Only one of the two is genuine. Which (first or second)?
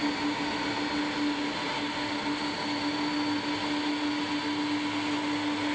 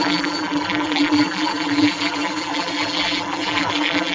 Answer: first